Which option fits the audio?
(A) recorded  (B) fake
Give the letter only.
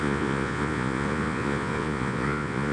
B